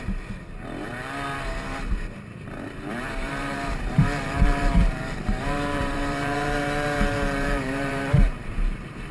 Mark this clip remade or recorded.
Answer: remade